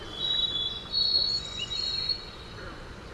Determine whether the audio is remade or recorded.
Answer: remade